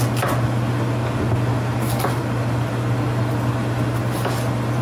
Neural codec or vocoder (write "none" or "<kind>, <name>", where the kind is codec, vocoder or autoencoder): none